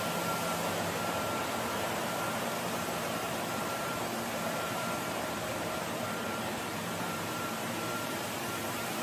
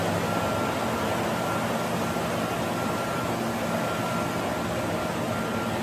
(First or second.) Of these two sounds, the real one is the second